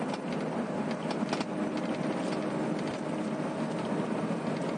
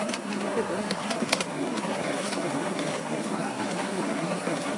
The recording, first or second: first